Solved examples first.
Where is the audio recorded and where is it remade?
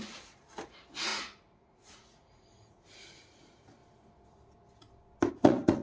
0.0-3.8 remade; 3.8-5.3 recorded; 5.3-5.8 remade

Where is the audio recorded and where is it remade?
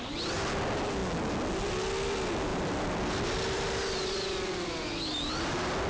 0.0-2.5 recorded; 2.5-5.3 remade; 5.3-5.9 recorded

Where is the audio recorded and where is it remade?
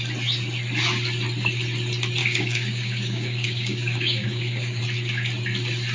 0.0-2.2 recorded; 2.2-4.8 remade; 4.8-5.9 recorded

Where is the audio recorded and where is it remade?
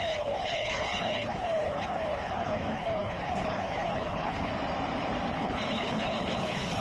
0.0-4.5 remade; 4.5-5.3 recorded; 5.3-6.8 remade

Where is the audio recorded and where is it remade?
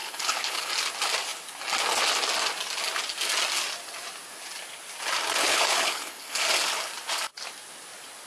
0.0-0.7 remade; 0.7-5.4 recorded; 5.4-6.4 remade; 6.4-8.3 recorded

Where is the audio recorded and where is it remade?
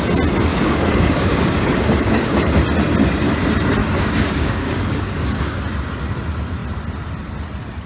0.0-0.5 recorded; 0.5-2.5 remade; 2.5-3.8 recorded; 3.8-5.6 remade; 5.6-7.9 recorded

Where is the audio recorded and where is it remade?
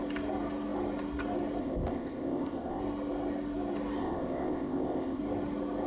0.0-1.6 recorded; 1.6-2.8 remade; 2.8-4.0 recorded; 4.0-5.2 remade; 5.2-5.9 recorded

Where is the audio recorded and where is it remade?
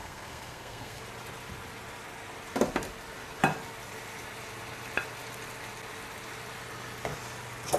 0.0-1.0 remade; 1.0-7.8 recorded